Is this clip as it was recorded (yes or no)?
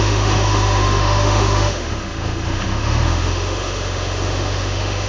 no